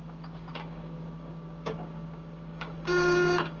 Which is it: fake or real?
fake